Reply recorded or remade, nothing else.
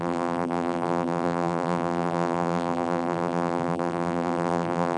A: remade